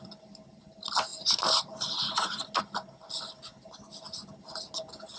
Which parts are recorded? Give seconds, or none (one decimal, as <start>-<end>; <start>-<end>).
0.0-5.2